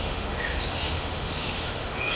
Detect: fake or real fake